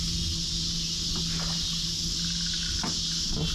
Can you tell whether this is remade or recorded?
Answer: recorded